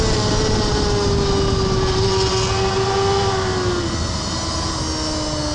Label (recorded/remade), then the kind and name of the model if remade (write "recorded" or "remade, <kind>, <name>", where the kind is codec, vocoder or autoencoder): recorded